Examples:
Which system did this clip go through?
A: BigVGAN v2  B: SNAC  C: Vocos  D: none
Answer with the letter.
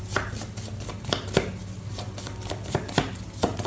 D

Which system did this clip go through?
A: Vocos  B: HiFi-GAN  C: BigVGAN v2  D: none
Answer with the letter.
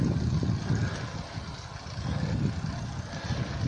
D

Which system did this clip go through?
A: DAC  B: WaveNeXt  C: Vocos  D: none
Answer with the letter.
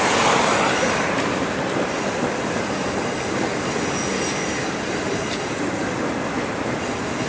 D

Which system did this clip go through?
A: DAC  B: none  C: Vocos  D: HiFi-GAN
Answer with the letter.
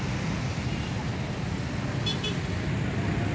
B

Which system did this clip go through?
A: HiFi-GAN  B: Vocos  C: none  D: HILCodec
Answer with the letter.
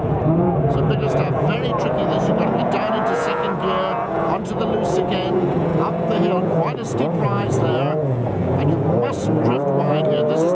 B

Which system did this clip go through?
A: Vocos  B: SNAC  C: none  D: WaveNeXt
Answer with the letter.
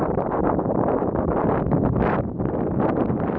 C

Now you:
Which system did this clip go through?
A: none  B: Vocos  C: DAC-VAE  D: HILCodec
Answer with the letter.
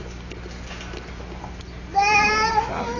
A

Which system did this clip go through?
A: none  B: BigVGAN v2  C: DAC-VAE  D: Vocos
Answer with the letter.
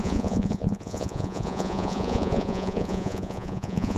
D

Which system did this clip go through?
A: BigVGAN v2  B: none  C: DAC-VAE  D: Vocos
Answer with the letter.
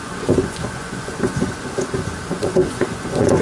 D